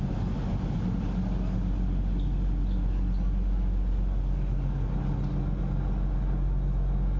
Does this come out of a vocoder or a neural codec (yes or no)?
no